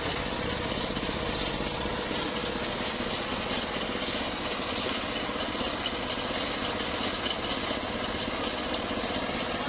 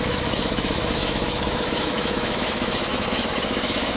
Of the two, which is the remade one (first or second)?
second